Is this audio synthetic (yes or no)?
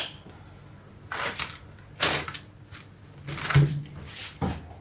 no